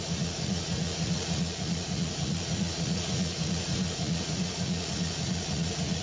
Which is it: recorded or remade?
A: remade